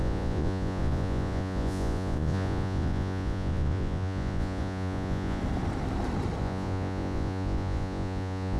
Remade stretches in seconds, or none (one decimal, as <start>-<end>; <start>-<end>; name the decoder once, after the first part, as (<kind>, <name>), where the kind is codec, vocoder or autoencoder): 0.0-5.4 (vocoder, Vocos); 6.4-8.6